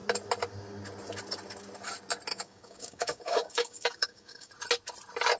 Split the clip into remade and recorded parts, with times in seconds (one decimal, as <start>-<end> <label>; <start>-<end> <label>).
0.0-2.3 recorded; 2.3-4.5 remade; 4.5-5.4 recorded